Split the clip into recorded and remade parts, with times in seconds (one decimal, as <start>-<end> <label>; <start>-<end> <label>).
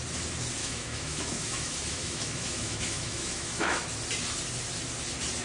0.0-0.6 recorded; 0.6-3.8 remade; 3.8-5.4 recorded